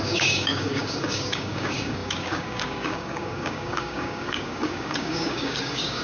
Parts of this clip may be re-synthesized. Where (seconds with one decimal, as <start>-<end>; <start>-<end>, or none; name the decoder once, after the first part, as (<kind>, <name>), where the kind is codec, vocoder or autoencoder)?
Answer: 0.0-6.0 (codec, DAC)